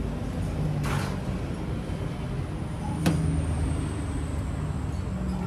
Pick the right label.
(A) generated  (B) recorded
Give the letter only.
B